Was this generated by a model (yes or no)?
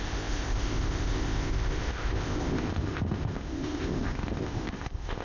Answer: yes